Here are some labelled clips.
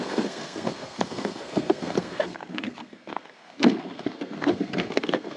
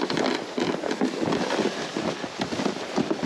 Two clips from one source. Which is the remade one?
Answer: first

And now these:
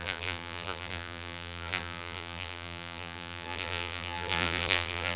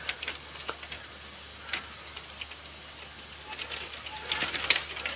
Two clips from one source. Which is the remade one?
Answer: first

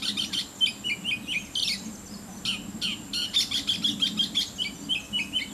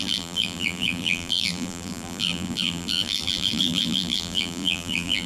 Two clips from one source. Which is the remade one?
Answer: second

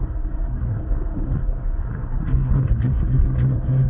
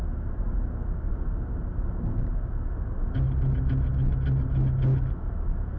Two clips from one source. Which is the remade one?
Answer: first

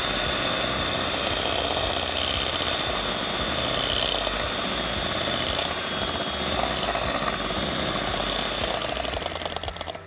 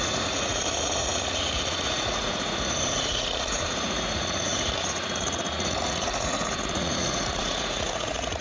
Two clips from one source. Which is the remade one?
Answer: second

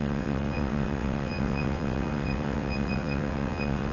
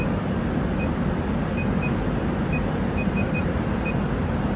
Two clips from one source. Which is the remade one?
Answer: first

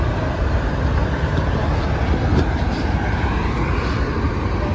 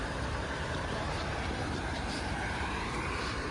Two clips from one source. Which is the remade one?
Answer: second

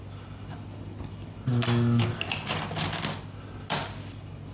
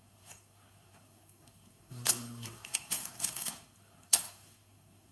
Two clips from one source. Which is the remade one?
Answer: second